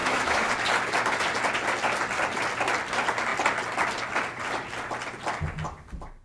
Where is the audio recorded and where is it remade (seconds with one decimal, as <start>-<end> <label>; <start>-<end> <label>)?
0.0-0.5 remade; 0.5-6.2 recorded